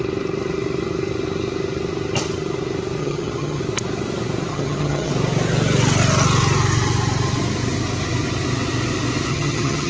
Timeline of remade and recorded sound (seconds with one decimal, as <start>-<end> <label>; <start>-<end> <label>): 0.0-3.0 recorded; 3.0-3.6 remade; 3.6-4.5 recorded; 4.5-5.1 remade; 5.1-9.3 recorded; 9.3-9.9 remade